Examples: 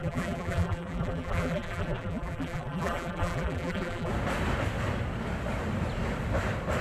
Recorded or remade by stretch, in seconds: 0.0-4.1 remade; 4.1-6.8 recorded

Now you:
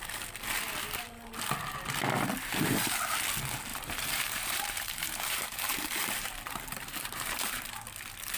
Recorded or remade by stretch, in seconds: 0.0-3.7 recorded; 3.7-7.6 remade; 7.6-8.4 recorded

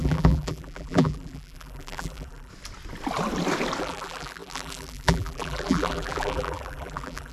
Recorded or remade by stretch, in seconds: 0.0-2.5 remade; 2.5-3.8 recorded; 3.8-7.3 remade

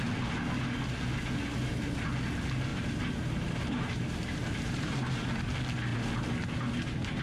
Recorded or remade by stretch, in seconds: 0.0-2.7 recorded; 2.7-5.3 remade; 5.3-7.2 recorded

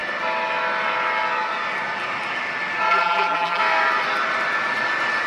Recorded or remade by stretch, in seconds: 0.0-2.9 recorded; 2.9-3.6 remade; 3.6-5.3 recorded

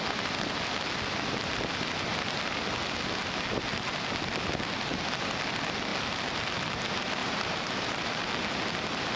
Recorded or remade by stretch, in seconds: 0.0-7.2 recorded; 7.2-8.2 remade; 8.2-9.2 recorded

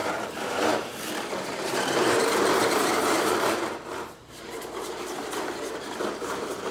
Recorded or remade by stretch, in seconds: 0.0-6.7 remade

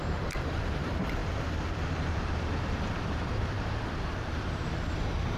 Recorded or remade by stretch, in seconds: 0.0-5.4 remade